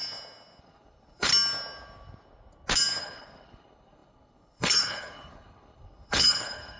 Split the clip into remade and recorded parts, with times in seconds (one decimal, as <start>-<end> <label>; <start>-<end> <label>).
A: 0.0-0.6 recorded; 0.6-1.3 remade; 1.3-3.0 recorded; 3.0-6.8 remade